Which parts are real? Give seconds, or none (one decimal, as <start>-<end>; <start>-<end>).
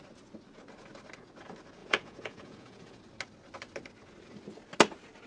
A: 0.0-1.8; 3.0-5.3